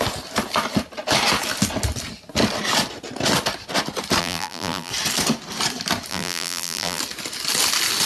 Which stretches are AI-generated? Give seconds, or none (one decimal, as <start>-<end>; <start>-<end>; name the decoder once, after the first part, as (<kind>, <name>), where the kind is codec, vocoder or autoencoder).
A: 4.2-4.9 (vocoder, BigVGAN v2); 6.1-7.0